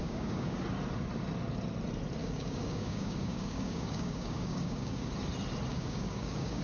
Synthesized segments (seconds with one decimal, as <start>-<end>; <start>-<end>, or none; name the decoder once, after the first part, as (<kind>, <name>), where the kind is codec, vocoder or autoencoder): 0.0-0.6 (codec, DAC); 2.2-5.1; 5.7-6.6